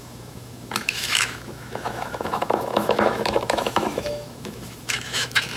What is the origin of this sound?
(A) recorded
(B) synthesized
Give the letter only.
B